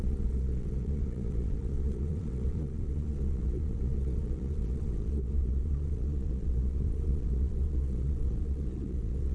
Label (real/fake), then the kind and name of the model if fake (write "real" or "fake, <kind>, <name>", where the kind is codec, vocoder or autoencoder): fake, vocoder, Vocos